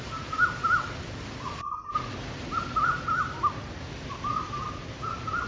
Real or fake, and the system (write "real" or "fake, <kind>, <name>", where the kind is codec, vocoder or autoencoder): real